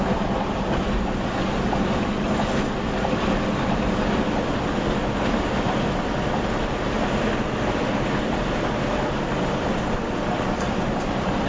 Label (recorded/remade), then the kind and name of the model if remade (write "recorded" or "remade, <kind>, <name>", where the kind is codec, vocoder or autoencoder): recorded